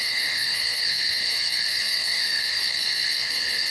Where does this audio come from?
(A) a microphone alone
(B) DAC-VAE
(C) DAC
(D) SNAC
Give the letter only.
D